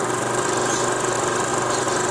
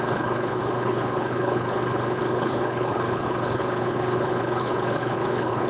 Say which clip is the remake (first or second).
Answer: second